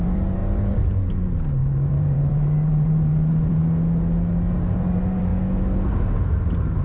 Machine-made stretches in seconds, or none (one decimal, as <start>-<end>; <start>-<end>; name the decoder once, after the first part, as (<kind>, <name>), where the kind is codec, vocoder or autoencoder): 0.0-3.6 (vocoder, BigVGAN v2); 4.5-5.3; 6.0-6.8